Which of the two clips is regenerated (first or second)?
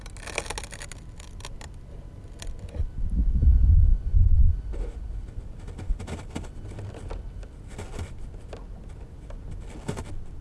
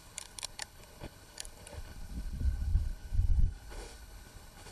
second